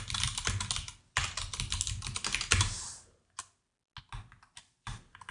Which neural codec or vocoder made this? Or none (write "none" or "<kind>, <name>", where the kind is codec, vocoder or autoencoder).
none